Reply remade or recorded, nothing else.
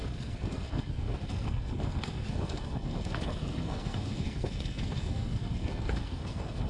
remade